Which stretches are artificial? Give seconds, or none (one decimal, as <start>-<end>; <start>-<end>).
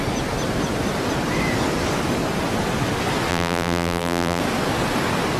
3.3-4.4